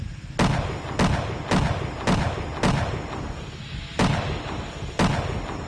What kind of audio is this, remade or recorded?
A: recorded